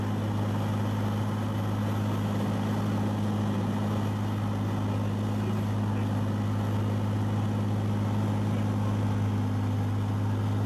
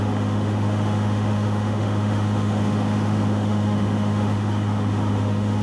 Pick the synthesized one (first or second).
second